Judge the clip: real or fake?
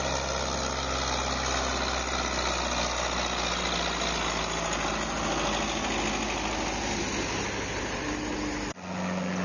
real